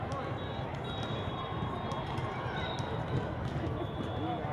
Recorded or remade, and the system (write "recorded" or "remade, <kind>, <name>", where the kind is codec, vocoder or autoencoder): recorded